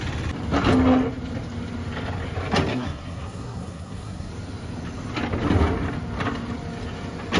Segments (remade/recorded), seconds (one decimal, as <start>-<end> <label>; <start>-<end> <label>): 0.0-2.7 recorded; 2.7-4.3 remade; 4.3-7.4 recorded